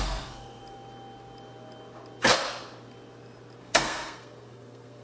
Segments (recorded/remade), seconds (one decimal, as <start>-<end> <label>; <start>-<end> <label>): 0.0-0.6 remade; 0.6-3.6 recorded; 3.6-5.0 remade